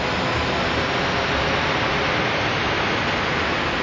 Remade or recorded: recorded